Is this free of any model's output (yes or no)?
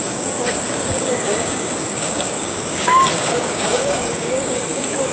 no